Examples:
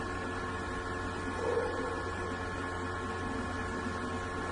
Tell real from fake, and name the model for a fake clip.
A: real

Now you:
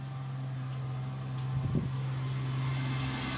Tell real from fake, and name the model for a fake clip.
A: real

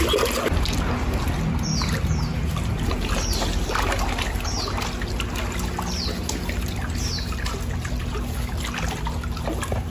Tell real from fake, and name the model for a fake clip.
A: real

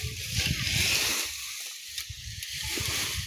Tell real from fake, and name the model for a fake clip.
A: real